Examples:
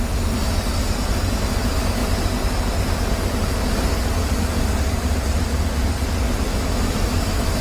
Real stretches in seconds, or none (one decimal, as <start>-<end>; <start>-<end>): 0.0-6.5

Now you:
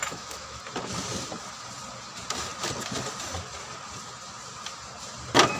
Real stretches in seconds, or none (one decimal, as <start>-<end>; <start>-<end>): 0.6-5.6

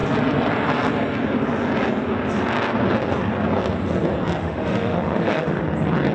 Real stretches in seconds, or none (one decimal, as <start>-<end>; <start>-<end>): 0.0-4.4; 5.6-6.1